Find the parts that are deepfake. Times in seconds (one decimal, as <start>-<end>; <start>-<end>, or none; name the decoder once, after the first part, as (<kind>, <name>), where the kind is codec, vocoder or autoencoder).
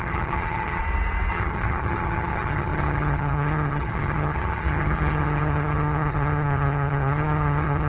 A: 0.0-0.8 (vocoder, HiFi-GAN); 1.3-7.9